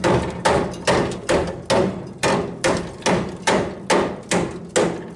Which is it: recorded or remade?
recorded